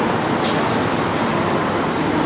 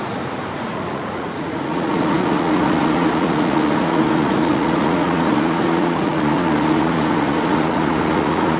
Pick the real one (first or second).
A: first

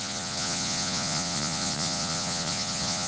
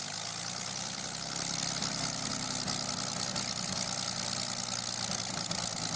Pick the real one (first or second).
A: second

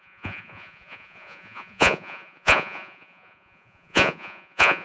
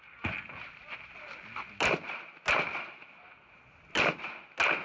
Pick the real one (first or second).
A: second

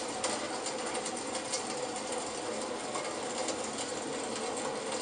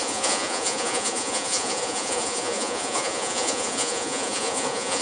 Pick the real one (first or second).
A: first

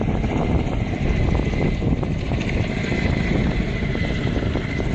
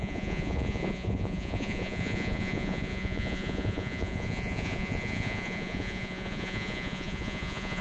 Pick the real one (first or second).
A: first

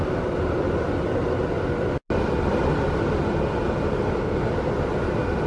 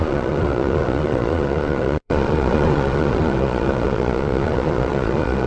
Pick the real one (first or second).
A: first